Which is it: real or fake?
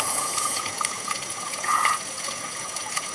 fake